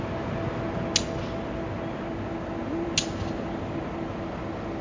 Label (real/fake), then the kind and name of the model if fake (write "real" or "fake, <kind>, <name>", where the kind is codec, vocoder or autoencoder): real